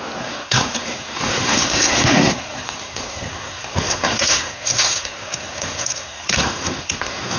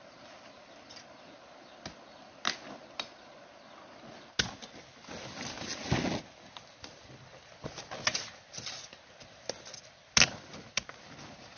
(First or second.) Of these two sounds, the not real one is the first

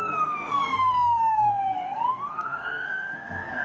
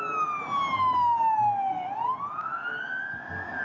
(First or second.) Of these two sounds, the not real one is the first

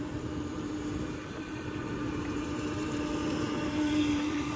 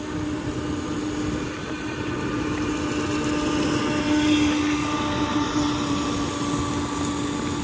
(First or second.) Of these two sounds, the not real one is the first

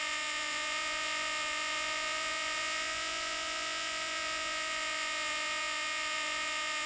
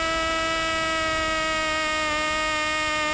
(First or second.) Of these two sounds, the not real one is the first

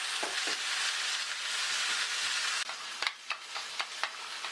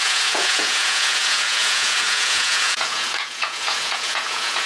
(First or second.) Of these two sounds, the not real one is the second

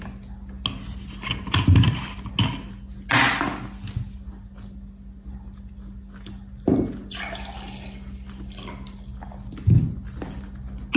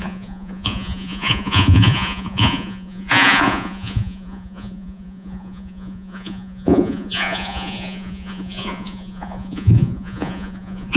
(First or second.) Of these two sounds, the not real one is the second